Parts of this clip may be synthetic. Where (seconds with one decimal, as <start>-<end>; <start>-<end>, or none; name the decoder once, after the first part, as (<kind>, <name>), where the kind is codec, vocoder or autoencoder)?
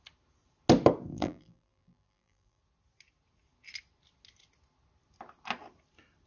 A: 1.1-2.6 (vocoder, BigVGAN v2)